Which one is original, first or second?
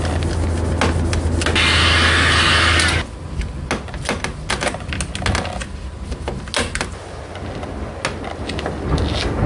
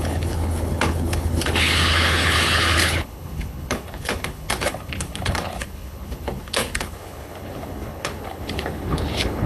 first